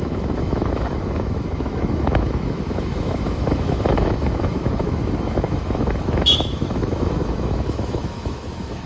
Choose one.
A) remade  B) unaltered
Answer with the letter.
A